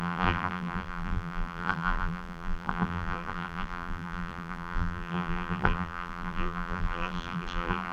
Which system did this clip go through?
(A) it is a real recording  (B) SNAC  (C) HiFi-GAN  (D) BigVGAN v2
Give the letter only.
D